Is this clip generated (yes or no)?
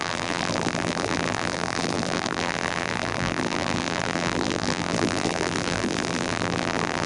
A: yes